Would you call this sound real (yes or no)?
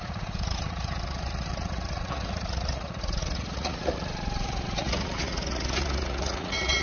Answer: no